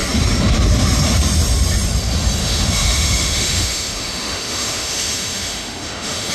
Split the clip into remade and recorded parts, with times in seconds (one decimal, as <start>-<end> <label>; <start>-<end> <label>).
0.0-2.4 recorded; 2.4-6.3 remade